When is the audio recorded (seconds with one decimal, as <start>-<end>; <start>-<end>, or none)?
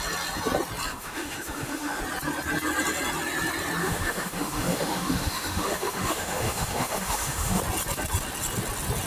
0.0-0.9; 2.0-3.8; 7.6-9.1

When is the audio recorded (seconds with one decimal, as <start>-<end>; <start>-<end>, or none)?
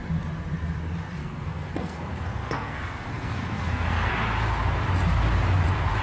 0.0-1.2; 4.1-6.0